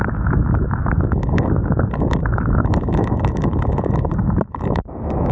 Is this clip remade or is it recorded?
remade